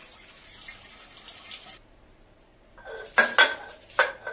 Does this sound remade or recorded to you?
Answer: recorded